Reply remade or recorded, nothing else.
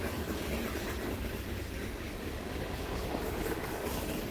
remade